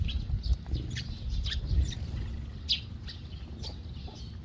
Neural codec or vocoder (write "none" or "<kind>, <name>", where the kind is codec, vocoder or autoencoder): none